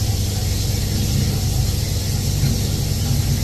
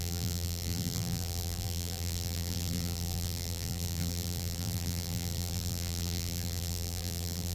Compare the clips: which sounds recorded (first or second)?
first